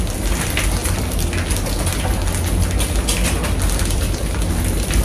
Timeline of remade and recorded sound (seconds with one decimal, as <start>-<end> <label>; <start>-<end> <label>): 0.0-0.8 remade; 0.8-3.8 recorded; 3.8-5.0 remade